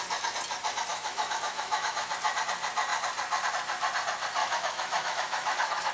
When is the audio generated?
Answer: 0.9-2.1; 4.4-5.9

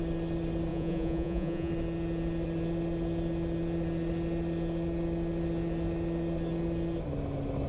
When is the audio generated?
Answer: 0.7-1.7